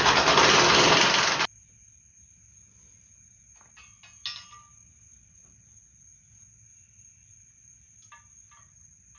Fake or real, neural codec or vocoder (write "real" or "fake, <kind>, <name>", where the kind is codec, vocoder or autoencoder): real